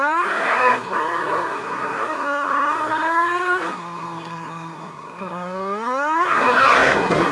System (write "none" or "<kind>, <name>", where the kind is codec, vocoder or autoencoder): codec, SNAC